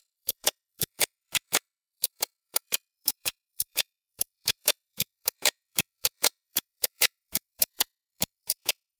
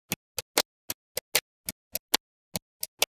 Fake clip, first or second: first